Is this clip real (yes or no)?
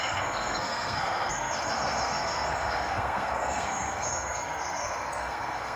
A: no